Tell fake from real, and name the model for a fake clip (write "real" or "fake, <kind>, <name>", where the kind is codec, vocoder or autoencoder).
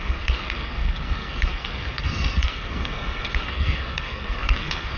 fake, codec, SNAC